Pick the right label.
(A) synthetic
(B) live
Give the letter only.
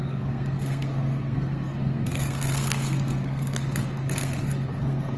A